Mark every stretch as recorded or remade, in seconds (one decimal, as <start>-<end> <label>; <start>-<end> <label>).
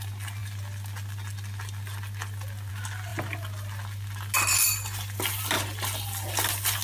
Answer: 0.0-6.8 recorded